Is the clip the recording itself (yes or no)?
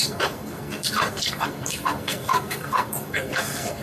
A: no